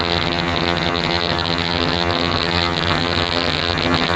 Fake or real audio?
fake